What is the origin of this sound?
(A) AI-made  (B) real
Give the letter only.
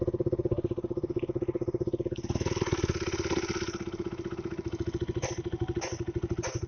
B